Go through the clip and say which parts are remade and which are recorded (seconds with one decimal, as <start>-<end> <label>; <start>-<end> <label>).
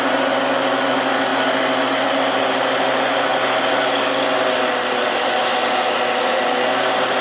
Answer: 0.0-7.2 recorded